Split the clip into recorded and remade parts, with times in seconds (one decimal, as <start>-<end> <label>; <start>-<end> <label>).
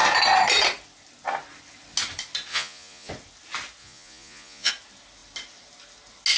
0.0-2.5 recorded; 2.5-3.1 remade; 3.1-3.8 recorded; 3.8-4.7 remade; 4.7-6.4 recorded